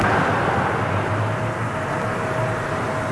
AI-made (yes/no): no